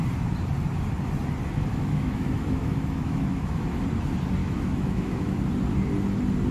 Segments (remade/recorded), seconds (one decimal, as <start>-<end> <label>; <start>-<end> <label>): 0.0-1.7 recorded; 1.7-3.8 remade; 3.8-4.4 recorded; 4.4-5.4 remade; 5.4-6.5 recorded